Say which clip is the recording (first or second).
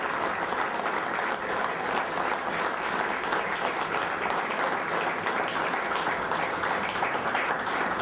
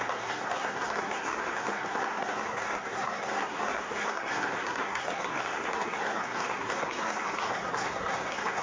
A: first